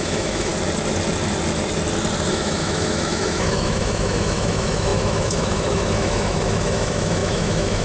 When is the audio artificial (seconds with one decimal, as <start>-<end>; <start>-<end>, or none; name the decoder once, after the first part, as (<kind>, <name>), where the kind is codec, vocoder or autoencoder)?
0.0-0.5 (autoencoder, DAC-VAE); 2.3-7.8